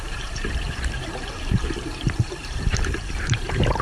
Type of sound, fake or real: fake